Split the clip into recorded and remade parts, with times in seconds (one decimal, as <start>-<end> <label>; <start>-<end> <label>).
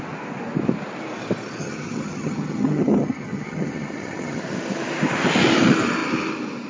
0.0-1.6 recorded; 1.6-4.4 remade; 4.4-6.7 recorded